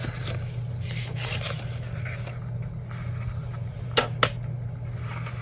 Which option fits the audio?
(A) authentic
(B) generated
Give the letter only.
A